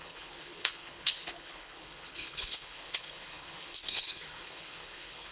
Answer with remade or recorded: remade